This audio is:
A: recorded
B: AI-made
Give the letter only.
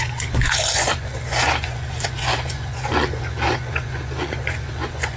B